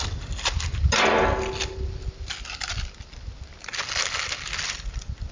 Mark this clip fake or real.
real